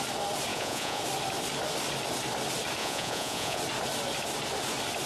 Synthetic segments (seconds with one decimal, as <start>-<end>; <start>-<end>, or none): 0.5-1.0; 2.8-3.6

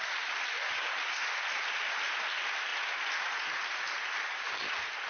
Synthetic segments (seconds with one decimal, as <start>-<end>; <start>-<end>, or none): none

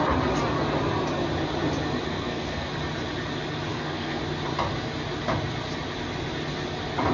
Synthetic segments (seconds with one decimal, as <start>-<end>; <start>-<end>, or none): 2.1-2.7; 3.7-4.2

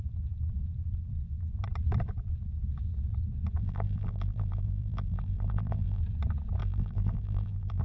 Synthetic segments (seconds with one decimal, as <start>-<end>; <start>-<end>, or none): 3.6-6.0; 6.6-7.8

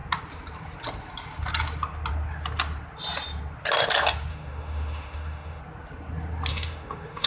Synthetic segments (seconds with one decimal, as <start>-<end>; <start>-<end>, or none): 4.3-5.6; 6.5-7.3

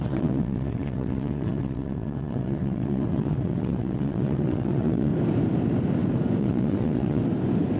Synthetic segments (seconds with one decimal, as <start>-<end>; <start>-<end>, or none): 0.0-5.1; 6.4-7.2

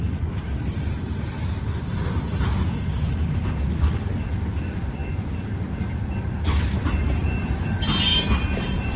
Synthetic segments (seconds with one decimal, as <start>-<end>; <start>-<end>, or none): none